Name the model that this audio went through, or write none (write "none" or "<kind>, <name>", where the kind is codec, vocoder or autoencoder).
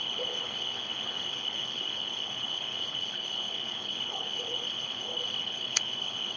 codec, HILCodec